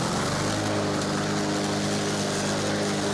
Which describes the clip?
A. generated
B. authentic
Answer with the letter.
B